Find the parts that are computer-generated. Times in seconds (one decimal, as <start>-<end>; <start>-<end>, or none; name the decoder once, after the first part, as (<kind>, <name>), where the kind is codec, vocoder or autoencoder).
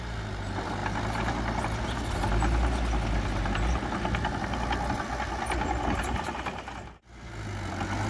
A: none